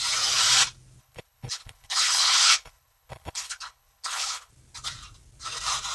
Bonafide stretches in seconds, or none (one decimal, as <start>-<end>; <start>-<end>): 0.0-1.0; 4.5-5.9